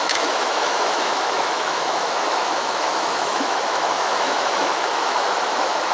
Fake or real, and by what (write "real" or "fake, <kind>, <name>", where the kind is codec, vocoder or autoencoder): fake, autoencoder, DAC-VAE